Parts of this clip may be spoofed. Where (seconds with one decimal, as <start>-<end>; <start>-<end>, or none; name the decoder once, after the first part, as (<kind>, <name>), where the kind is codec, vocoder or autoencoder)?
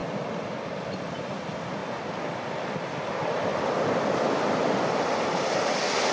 0.0-1.8 (vocoder, BigVGAN v2); 3.1-6.1